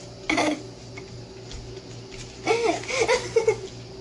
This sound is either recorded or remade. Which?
recorded